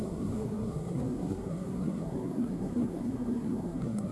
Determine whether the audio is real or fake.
fake